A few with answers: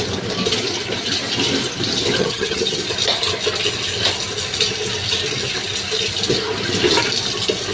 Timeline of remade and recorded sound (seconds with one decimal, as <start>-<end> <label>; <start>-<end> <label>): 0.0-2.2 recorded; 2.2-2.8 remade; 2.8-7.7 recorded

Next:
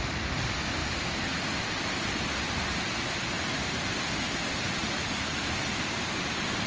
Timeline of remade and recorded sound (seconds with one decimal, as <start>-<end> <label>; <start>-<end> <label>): 0.0-6.7 recorded

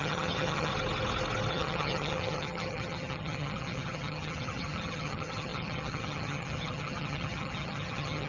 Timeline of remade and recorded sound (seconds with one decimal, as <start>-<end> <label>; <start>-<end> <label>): 0.0-0.7 remade; 0.7-1.5 recorded; 1.5-8.3 remade

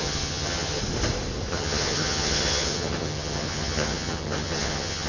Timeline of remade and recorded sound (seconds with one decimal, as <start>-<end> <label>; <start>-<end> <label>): 0.0-0.8 remade; 0.8-1.5 recorded; 1.5-5.1 remade